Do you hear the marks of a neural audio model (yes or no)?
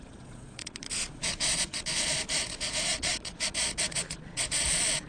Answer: yes